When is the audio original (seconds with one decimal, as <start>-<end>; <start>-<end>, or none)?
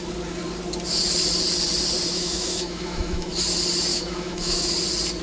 0.0-2.1; 3.3-3.9; 4.7-5.2